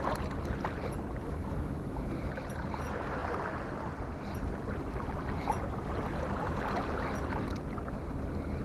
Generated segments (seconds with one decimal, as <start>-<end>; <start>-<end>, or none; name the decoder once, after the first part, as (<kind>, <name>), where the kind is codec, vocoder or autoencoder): 1.2-2.3 (autoencoder, DAC-VAE)